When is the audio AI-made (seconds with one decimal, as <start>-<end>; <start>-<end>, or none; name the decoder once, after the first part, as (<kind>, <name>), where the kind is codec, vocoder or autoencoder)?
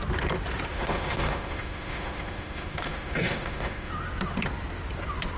0.7-3.9 (autoencoder, DAC-VAE)